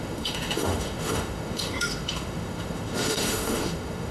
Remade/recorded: remade